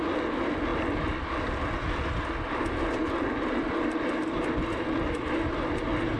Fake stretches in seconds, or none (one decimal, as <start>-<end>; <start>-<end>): none